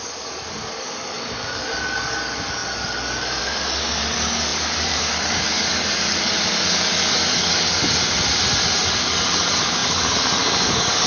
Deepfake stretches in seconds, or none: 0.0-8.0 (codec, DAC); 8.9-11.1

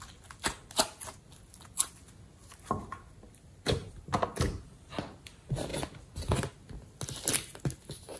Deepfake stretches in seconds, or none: none

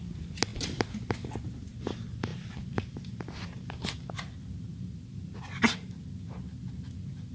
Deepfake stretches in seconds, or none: none